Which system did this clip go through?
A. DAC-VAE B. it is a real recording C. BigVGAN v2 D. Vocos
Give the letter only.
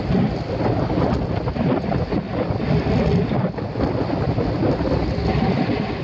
B